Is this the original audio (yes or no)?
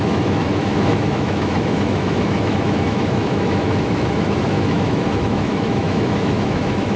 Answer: no